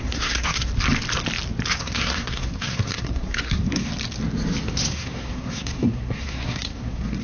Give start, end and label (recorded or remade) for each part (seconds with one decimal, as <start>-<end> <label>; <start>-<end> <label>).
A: 0.0-0.7 remade; 0.7-1.7 recorded; 1.7-3.9 remade; 3.9-4.9 recorded; 4.9-7.2 remade